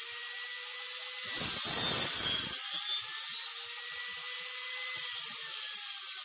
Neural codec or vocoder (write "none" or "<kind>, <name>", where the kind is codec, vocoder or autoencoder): none